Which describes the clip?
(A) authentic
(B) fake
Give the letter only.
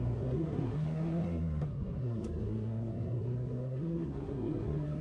B